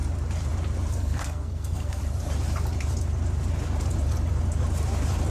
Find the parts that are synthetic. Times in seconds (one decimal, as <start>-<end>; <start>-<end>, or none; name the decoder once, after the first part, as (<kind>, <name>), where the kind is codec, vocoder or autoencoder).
0.9-2.0 (codec, SNAC)